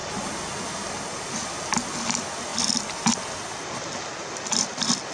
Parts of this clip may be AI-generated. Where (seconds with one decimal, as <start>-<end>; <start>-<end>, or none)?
none